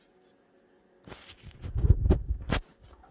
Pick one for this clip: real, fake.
real